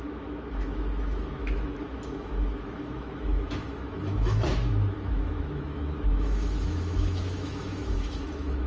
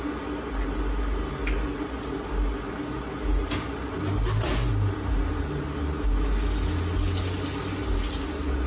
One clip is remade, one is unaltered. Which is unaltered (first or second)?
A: second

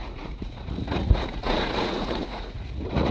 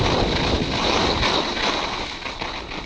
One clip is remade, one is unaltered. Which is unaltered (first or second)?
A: second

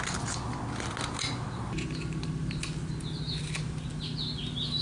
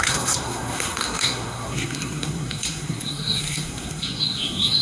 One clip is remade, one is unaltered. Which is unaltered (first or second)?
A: first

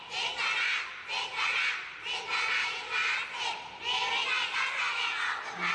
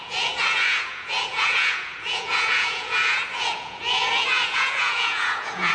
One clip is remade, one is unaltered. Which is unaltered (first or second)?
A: first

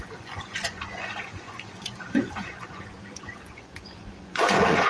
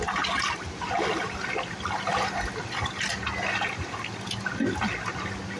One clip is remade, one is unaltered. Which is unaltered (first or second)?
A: second